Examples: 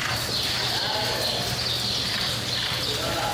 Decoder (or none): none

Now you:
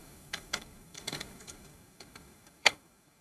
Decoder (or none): codec, DAC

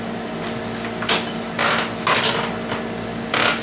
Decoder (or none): none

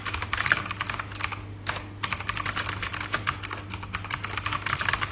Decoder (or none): none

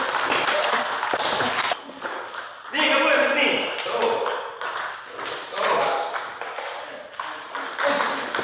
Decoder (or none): none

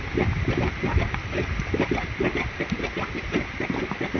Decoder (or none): none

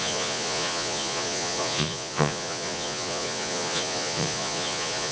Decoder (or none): vocoder, Vocos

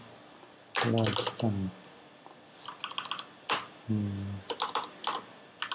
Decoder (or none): none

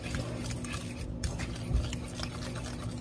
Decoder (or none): none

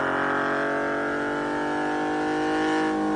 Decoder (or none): none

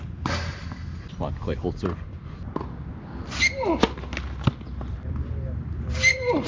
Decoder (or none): none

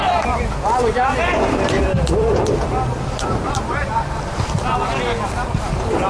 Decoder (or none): none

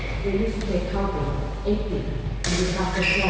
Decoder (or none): none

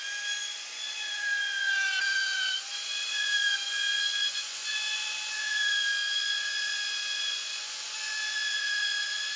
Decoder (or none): vocoder, Vocos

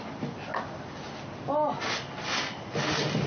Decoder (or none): none